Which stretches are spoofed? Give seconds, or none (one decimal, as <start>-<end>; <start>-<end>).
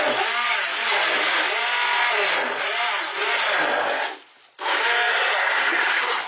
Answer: 5.1-6.3